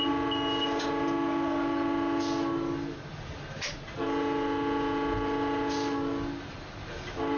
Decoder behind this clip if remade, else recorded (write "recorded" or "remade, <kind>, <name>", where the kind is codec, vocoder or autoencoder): recorded